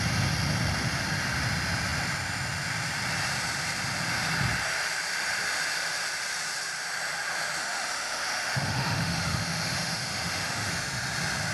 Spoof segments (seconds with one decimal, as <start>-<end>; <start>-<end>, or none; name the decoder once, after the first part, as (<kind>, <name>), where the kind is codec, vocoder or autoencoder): 7.6-10.7 (autoencoder, DAC-VAE)